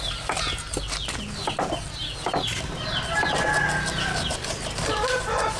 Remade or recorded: recorded